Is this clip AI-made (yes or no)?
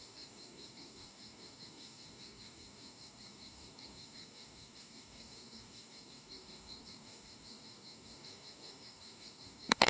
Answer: yes